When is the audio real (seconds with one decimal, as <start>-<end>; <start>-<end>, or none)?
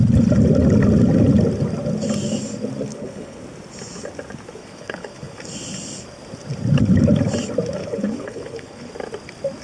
0.0-2.9; 3.4-4.6; 5.4-7.8; 8.9-9.6